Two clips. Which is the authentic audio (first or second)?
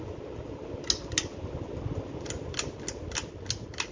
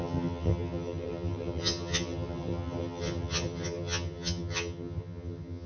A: first